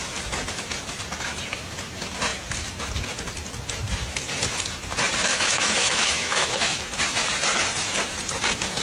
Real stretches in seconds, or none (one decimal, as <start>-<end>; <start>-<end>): 0.0-5.3; 6.8-8.8